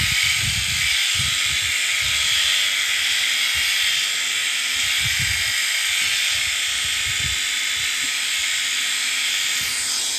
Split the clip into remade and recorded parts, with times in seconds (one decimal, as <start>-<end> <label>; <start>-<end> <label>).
0.0-10.2 recorded

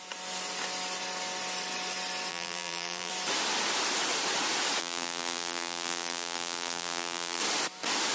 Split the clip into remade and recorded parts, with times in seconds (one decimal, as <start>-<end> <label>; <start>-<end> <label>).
0.0-2.3 recorded; 2.3-3.1 remade; 3.1-4.8 recorded; 4.8-7.4 remade; 7.4-8.1 recorded

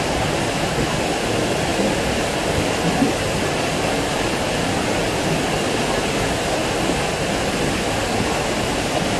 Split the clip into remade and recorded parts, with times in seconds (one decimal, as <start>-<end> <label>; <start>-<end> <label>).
0.0-9.2 recorded

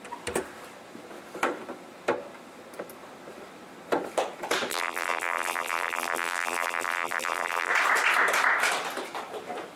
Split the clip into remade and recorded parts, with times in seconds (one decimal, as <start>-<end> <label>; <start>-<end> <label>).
0.0-4.7 recorded; 4.7-7.7 remade; 7.7-9.8 recorded

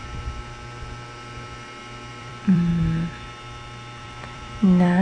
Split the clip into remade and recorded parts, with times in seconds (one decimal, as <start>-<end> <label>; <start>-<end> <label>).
0.0-2.1 recorded; 2.1-2.7 remade; 2.7-4.0 recorded; 4.0-5.0 remade

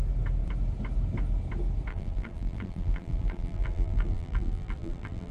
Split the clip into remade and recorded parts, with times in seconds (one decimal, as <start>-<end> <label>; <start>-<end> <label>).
0.0-1.9 recorded; 1.9-5.3 remade